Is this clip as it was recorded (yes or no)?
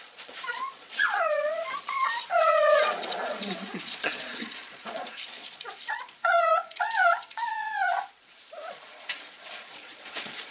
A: no